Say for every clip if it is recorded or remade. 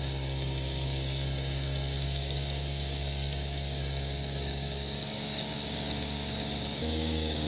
remade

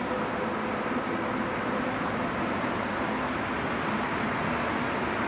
recorded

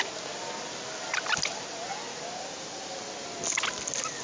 recorded